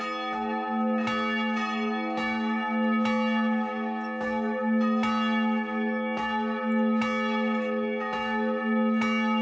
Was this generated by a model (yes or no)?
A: no